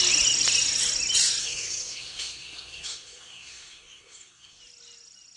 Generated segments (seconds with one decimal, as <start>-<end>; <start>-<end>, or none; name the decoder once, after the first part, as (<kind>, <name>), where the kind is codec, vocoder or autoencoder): 1.4-4.6 (codec, SNAC)